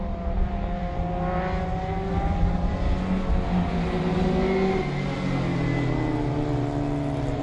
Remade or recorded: recorded